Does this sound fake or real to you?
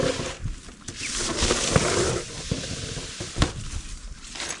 real